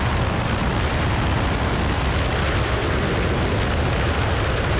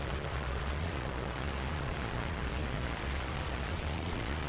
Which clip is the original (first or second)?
first